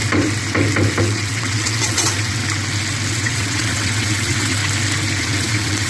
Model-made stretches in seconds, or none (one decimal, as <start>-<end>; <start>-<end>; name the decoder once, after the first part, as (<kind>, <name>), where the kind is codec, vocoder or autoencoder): 1.0-2.4 (vocoder, WaveNeXt); 3.1-4.6; 5.2-5.9